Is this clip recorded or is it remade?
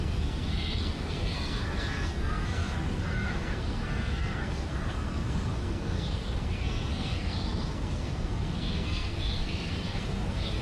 remade